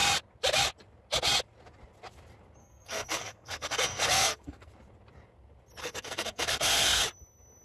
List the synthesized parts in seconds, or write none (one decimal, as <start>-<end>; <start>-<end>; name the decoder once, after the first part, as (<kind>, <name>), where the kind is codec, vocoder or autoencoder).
2.6-4.7 (codec, SNAC); 5.8-7.0